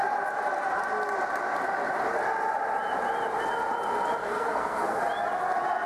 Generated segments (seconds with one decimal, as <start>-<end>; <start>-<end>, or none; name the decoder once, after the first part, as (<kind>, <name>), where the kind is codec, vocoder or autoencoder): 4.2-5.0 (codec, SNAC)